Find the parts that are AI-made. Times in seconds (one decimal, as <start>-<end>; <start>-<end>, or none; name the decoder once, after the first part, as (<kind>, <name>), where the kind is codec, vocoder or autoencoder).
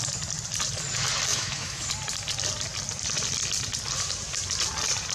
1.3-1.9 (autoencoder, DAC-VAE)